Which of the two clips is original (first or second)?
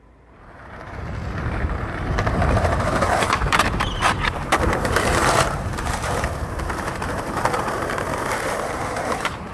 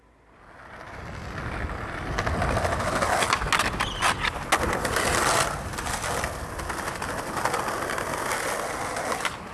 second